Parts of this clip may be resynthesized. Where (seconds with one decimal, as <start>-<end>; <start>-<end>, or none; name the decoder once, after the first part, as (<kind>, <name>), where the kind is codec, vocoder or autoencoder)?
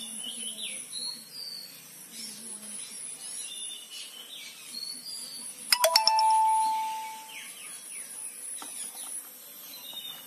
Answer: none